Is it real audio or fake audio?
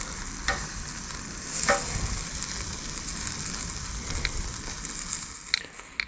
real